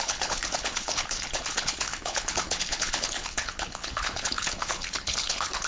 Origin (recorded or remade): remade